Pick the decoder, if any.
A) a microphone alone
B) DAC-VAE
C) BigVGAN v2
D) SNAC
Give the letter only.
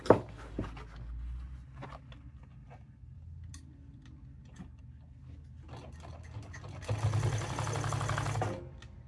A